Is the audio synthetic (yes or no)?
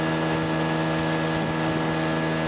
no